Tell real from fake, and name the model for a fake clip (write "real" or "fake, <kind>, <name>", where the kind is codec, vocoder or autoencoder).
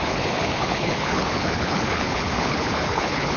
fake, codec, HILCodec